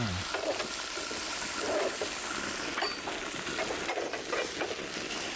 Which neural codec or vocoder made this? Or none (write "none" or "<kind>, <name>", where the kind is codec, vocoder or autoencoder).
none